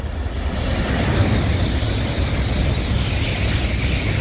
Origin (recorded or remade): recorded